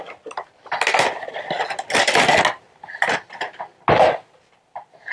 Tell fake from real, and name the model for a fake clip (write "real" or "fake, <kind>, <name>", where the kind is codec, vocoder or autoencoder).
real